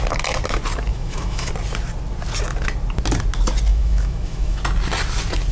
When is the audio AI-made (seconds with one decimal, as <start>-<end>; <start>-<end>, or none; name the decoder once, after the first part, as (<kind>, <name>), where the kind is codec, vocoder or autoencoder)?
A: 0.9-1.5 (autoencoder, DAC-VAE); 3.7-4.6